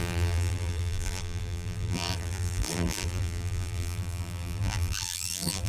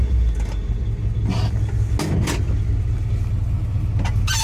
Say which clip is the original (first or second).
second